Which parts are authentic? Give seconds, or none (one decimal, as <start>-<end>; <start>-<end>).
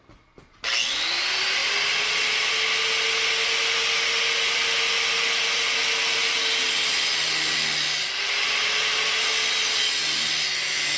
0.0-11.0